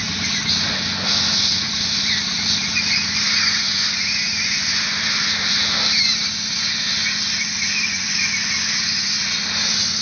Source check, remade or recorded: remade